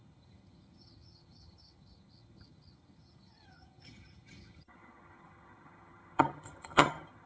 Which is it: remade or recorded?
remade